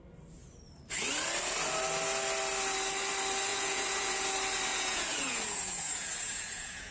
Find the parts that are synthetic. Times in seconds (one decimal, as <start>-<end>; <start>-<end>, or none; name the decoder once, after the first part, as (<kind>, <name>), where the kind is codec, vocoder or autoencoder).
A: 3.5-4.2 (vocoder, Vocos); 4.7-6.9